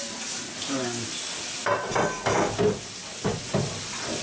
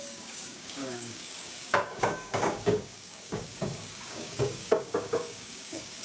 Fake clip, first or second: second